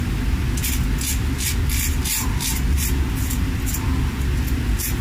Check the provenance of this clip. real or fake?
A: real